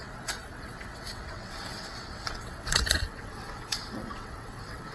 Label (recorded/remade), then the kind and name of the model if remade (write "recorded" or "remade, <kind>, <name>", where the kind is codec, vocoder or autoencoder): remade, vocoder, WaveNeXt